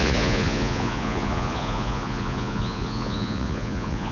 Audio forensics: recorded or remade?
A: remade